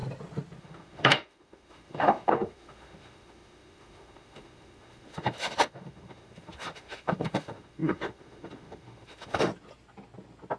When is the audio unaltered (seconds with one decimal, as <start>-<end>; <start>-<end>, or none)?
0.0-0.6; 9.5-10.6